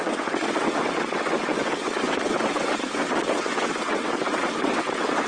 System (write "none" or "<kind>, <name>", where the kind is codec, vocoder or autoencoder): vocoder, WaveNeXt